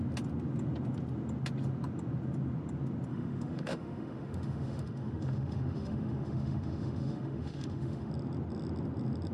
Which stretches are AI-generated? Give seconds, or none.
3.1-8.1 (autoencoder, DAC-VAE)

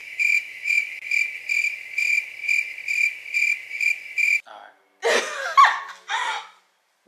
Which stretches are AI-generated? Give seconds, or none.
0.0-1.1 (autoencoder, DAC-VAE)

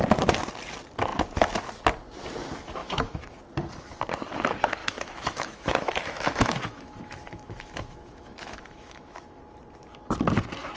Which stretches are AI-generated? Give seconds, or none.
2.8-3.4 (autoencoder, DAC-VAE); 4.8-9.4